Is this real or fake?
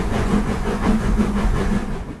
fake